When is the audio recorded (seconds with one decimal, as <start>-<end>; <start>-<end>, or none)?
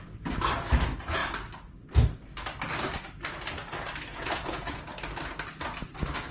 0.0-4.1; 4.8-6.3